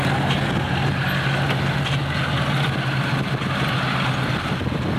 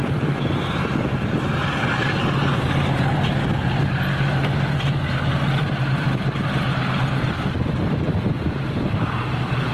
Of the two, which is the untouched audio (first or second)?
first